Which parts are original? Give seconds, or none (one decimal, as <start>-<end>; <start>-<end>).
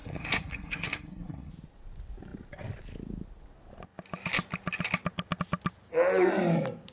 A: 1.5-6.9